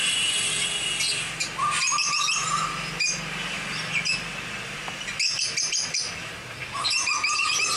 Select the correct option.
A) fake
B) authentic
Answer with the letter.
B